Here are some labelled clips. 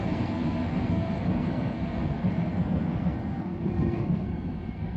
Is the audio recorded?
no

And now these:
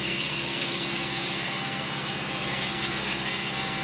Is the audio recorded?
no